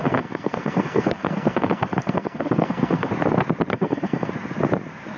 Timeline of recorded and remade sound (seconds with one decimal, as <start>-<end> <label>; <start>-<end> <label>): 0.0-3.1 remade; 3.1-3.7 recorded; 3.7-4.3 remade; 4.3-5.2 recorded